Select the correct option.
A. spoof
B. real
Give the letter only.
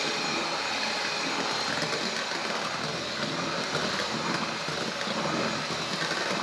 B